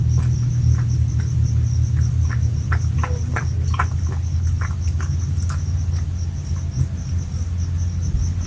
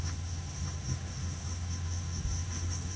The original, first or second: first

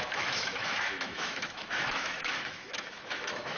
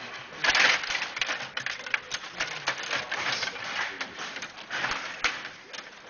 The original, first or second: second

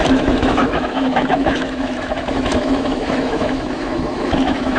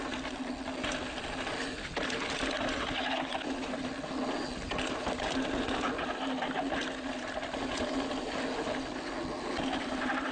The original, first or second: second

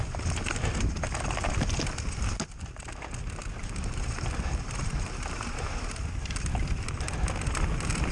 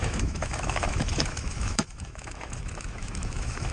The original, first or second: first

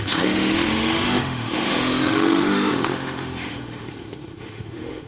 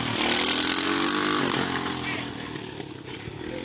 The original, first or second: second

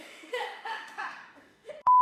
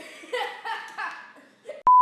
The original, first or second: second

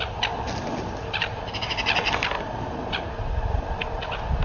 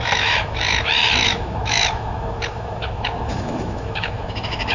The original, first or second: first